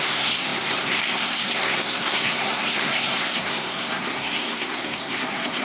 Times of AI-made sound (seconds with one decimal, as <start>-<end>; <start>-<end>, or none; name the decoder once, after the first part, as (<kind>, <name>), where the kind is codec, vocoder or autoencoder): 0.0-5.6 (codec, SNAC)